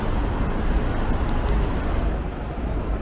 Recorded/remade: recorded